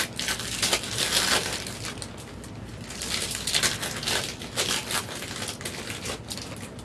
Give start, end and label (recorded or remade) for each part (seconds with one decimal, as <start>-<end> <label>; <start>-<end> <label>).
0.0-6.8 recorded